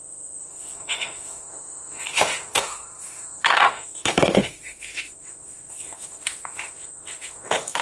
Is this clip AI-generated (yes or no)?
yes